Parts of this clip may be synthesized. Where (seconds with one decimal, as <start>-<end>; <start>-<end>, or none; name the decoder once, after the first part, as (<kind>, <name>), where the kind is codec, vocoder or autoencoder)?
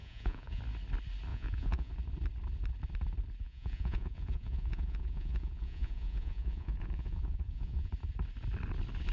0.0-0.6 (vocoder, Vocos); 1.3-1.9; 3.4-7.9